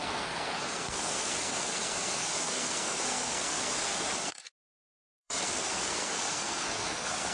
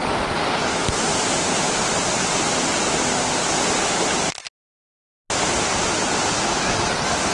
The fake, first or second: first